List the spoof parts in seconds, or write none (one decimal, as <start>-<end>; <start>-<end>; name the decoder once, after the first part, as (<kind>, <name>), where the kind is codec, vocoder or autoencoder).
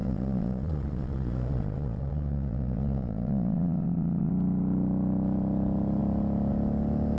0.0-4.3 (vocoder, Vocos)